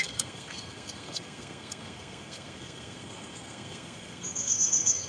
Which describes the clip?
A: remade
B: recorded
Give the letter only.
A